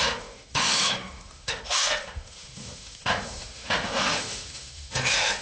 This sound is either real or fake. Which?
fake